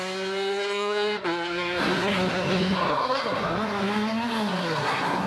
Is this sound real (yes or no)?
no